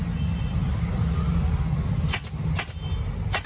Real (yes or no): yes